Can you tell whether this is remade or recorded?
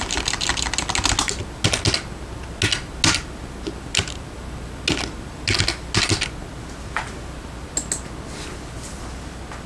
recorded